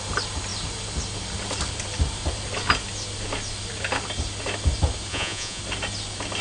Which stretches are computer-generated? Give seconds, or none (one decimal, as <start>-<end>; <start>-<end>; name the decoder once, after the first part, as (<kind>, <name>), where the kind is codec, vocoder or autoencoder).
5.1-5.6 (vocoder, Vocos)